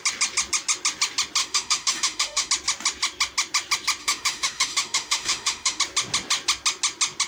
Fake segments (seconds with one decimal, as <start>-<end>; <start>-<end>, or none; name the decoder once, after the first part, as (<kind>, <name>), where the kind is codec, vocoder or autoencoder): 1.4-2.5 (autoencoder, DAC-VAE); 4.0-5.8